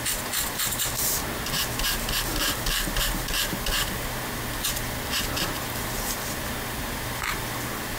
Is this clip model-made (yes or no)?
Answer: no